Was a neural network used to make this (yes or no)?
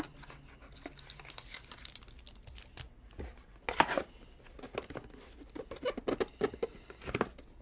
no